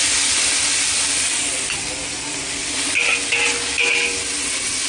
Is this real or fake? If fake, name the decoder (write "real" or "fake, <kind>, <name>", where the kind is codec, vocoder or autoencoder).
real